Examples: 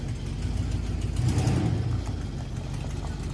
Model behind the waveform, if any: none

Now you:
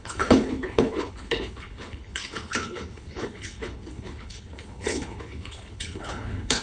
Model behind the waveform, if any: codec, HILCodec